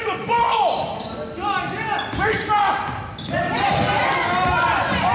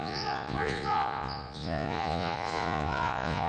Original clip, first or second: first